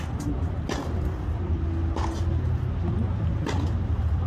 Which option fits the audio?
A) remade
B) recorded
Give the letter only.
B